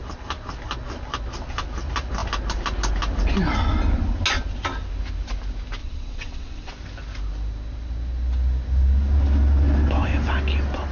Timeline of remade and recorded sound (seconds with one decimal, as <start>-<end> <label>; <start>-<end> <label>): 0.0-5.8 recorded; 5.8-6.7 remade; 6.7-10.9 recorded

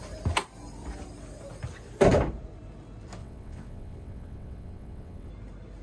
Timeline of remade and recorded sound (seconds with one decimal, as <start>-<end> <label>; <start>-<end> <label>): 0.0-3.2 recorded; 3.2-5.3 remade; 5.3-5.8 recorded

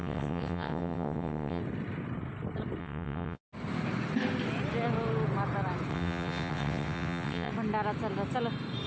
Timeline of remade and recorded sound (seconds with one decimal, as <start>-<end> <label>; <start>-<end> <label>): 0.0-1.6 remade; 1.6-2.8 recorded; 2.8-3.4 remade; 3.4-5.9 recorded; 5.9-7.5 remade; 7.5-8.9 recorded

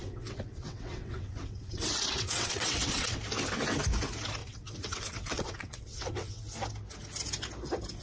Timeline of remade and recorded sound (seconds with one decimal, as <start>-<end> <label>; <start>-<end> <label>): 0.0-3.2 remade; 3.2-4.4 recorded; 4.4-6.4 remade; 6.4-8.0 recorded

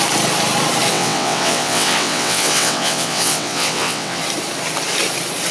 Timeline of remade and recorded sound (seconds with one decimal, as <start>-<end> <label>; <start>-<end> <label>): 0.0-0.9 recorded; 0.9-4.2 remade; 4.2-5.5 recorded

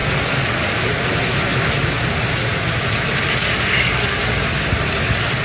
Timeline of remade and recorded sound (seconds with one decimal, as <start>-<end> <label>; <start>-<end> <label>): 0.0-5.4 recorded